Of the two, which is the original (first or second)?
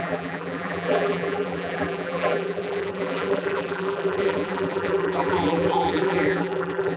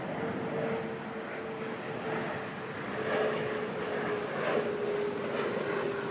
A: second